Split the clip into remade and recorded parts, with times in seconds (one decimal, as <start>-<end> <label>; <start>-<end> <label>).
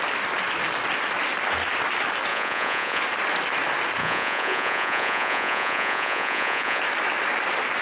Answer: 0.0-2.3 recorded; 2.3-3.0 remade; 3.0-4.0 recorded; 4.0-6.8 remade; 6.8-7.8 recorded